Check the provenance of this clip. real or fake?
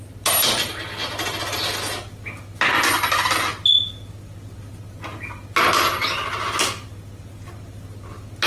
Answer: real